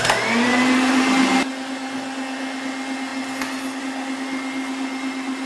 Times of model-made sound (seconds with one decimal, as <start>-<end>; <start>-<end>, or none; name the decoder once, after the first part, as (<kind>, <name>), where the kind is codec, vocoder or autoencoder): none